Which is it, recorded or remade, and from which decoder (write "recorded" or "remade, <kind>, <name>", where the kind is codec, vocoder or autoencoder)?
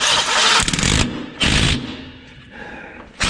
recorded